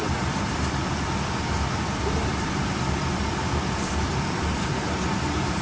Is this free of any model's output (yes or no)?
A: no